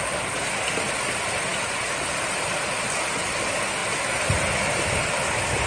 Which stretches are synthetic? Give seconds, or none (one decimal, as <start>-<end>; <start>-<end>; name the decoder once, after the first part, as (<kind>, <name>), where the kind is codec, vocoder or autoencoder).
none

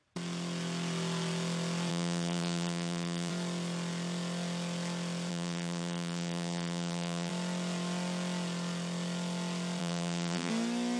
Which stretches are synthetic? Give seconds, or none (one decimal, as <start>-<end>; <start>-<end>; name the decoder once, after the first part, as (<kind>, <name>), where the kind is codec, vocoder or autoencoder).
1.9-3.3 (vocoder, BigVGAN v2); 5.3-7.3; 9.8-10.5

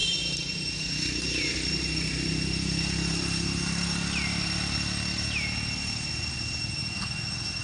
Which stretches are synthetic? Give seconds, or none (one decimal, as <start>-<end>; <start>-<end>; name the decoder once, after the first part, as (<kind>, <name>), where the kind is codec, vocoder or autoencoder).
0.0-4.6 (vocoder, BigVGAN v2)

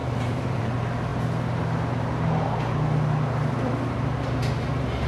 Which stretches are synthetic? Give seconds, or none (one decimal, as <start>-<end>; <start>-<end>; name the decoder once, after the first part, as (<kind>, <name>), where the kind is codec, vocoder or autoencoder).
0.0-0.6 (vocoder, BigVGAN v2)

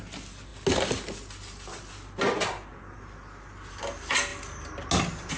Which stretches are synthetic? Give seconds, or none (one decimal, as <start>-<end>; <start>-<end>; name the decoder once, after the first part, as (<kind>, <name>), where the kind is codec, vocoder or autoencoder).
none

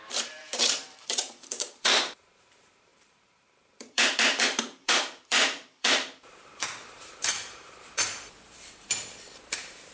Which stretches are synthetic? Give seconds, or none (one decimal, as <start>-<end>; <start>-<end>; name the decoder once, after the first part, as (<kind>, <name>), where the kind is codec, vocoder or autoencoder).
0.0-9.9 (vocoder, BigVGAN v2)

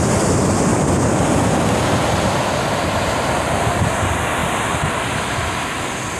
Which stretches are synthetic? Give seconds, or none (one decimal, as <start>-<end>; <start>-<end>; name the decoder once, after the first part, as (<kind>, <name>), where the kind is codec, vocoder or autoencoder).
none